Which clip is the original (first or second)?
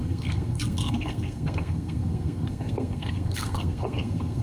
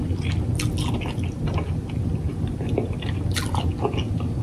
second